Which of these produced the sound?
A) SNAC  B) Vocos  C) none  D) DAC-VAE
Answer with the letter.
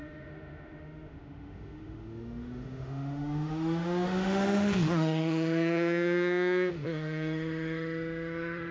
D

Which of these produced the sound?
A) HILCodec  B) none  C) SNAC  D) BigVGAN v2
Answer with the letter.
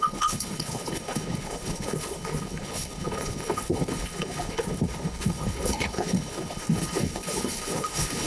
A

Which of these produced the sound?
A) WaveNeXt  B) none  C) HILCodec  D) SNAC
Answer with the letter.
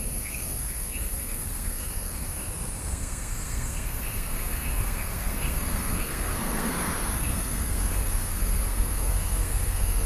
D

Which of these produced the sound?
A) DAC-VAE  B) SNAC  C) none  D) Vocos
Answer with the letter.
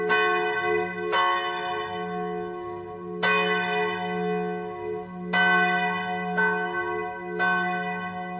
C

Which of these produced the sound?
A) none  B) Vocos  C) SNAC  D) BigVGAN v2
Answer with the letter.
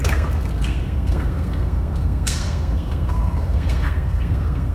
C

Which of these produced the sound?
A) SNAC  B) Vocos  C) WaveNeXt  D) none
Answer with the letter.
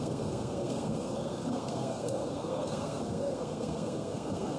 A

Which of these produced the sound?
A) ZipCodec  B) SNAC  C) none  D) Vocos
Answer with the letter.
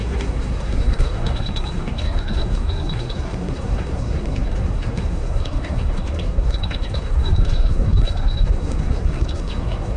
B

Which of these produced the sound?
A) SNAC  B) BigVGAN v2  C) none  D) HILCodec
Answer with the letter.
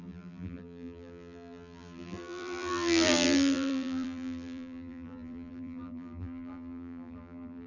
B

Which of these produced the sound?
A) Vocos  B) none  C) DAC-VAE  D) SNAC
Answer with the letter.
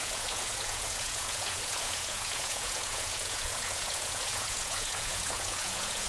A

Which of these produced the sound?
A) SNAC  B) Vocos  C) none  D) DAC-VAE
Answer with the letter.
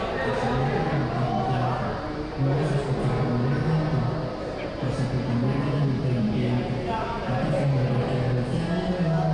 C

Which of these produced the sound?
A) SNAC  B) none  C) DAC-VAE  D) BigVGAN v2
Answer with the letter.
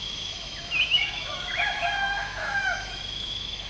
C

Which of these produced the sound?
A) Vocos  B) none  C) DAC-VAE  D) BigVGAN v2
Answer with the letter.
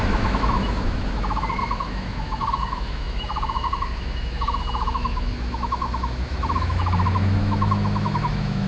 C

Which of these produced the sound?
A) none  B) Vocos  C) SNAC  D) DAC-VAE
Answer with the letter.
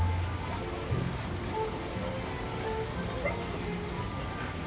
A